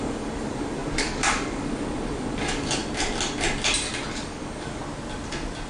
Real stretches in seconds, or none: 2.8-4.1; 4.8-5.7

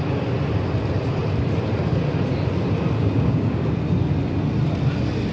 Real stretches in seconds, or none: 0.0-3.0; 3.7-5.3